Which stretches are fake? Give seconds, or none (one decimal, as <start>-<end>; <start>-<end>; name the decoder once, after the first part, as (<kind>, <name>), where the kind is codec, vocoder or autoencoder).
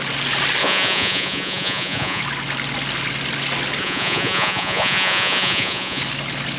0.6-2.2 (vocoder, Vocos); 3.8-6.0